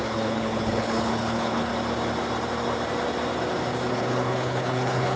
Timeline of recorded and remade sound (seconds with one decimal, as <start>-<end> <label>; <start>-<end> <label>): 0.0-1.7 remade; 1.7-3.9 recorded; 3.9-5.2 remade

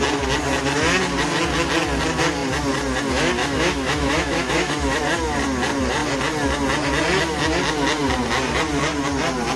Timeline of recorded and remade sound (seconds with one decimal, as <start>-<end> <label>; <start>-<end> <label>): 0.0-3.4 recorded; 3.4-5.0 remade; 5.0-9.6 recorded

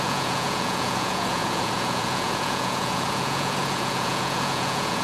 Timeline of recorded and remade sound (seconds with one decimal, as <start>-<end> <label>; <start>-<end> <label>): 0.0-5.0 remade

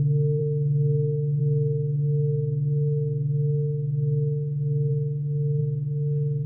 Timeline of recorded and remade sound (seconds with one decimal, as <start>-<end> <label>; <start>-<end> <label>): 0.0-6.5 recorded

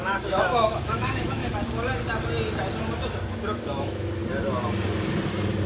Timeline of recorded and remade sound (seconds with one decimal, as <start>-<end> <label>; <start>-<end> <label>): 0.0-1.4 remade; 1.4-3.4 recorded; 3.4-4.2 remade; 4.2-5.7 recorded

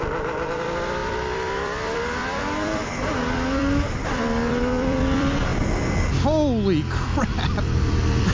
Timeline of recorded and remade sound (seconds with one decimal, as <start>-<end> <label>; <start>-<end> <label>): 0.0-5.5 remade; 5.5-7.2 recorded; 7.2-8.3 remade

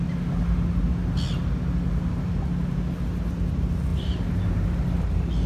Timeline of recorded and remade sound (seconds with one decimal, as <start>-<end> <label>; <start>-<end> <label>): 0.0-5.5 recorded